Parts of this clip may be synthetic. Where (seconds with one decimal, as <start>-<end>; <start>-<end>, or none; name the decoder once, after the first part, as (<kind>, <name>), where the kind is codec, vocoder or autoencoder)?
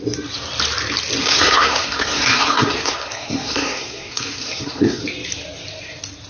1.2-5.0 (codec, SNAC)